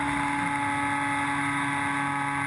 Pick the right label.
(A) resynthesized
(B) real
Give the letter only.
B